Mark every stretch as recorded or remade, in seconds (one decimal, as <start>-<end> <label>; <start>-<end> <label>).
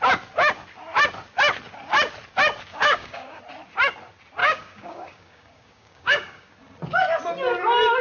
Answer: 0.0-2.7 recorded; 2.7-3.4 remade; 3.4-4.4 recorded; 4.4-6.5 remade; 6.5-8.0 recorded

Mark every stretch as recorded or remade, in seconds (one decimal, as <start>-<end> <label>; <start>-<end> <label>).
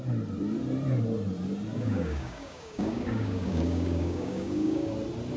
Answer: 0.0-1.7 recorded; 1.7-4.9 remade; 4.9-5.4 recorded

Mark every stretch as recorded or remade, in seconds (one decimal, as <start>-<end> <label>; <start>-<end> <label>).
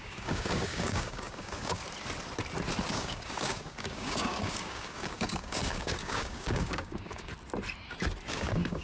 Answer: 0.0-1.8 remade; 1.8-2.9 recorded; 2.9-7.3 remade; 7.3-8.3 recorded; 8.3-8.8 remade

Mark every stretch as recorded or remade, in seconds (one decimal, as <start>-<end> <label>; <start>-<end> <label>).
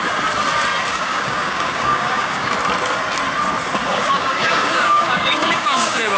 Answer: 0.0-0.9 recorded; 0.9-2.5 remade; 2.5-3.9 recorded; 3.9-6.2 remade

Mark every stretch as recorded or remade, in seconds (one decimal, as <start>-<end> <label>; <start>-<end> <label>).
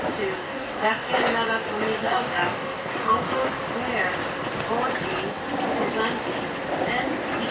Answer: 0.0-0.4 recorded; 0.4-1.1 remade; 1.1-2.0 recorded; 2.0-3.5 remade; 3.5-7.5 recorded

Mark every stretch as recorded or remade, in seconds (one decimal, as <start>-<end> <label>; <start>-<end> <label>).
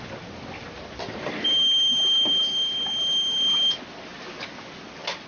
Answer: 0.0-5.3 recorded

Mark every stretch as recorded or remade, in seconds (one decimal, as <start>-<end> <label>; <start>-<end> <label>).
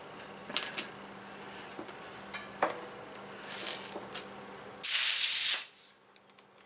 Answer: 0.0-6.7 recorded